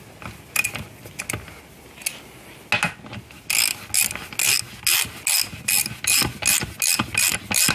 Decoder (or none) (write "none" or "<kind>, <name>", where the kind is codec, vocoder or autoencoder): none